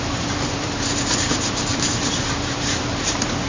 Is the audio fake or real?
fake